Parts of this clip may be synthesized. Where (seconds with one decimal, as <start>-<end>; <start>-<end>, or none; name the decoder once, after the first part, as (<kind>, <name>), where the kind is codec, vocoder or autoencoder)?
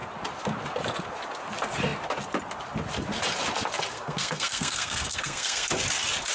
3.9-5.7 (codec, SNAC)